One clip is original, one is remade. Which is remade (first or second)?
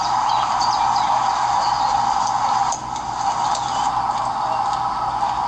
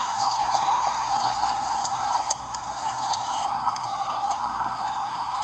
second